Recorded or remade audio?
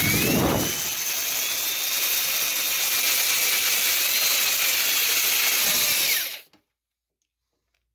recorded